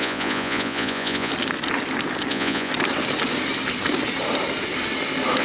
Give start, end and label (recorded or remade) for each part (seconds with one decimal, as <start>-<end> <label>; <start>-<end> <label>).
0.0-1.3 remade; 1.3-2.3 recorded; 2.3-2.7 remade; 2.7-5.4 recorded